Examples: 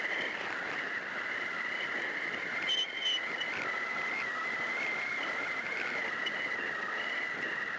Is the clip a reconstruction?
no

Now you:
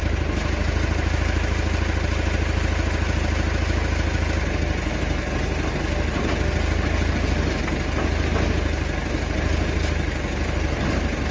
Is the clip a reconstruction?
no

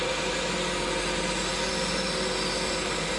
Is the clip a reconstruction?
no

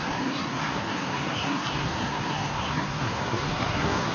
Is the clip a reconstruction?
yes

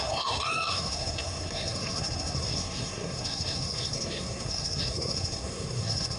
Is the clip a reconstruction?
yes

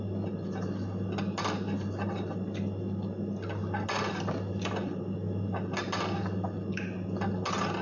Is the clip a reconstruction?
no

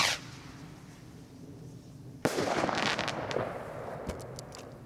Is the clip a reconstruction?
no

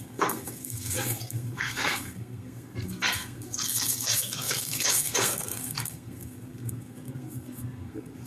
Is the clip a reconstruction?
yes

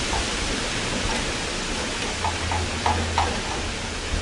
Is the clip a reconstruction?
no